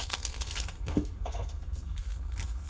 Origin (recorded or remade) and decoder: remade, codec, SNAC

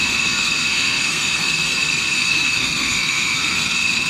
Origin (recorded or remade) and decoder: remade, codec, SNAC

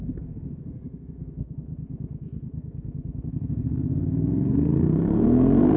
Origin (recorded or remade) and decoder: remade, codec, SNAC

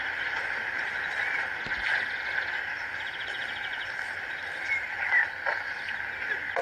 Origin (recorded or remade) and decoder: recorded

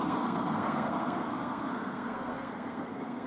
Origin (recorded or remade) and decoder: remade, codec, SNAC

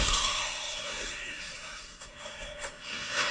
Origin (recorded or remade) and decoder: remade, codec, SNAC